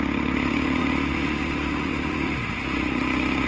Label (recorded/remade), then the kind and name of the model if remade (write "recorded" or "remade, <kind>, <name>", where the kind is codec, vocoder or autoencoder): remade, vocoder, Vocos